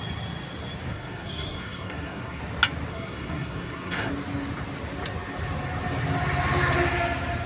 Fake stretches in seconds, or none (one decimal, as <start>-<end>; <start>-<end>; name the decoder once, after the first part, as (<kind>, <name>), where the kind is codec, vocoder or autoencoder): 0.9-2.4 (codec, SNAC); 2.9-4.1